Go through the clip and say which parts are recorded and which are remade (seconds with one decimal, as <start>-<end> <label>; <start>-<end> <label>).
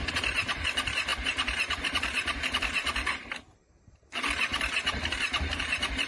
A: 0.0-6.1 remade